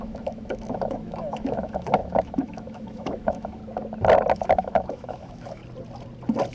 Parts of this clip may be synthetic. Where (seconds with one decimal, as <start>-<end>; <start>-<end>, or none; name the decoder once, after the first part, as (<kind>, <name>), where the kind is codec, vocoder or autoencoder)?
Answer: 0.0-3.6 (autoencoder, DAC-VAE); 4.3-5.6